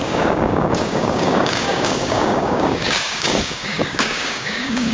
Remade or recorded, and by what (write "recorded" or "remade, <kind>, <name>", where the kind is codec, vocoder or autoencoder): remade, codec, DAC